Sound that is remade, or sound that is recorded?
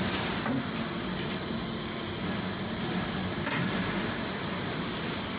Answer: recorded